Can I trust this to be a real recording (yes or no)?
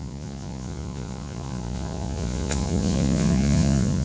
no